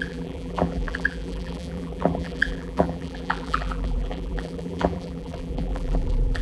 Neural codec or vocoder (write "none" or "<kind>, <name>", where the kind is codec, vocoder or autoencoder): vocoder, BigVGAN v2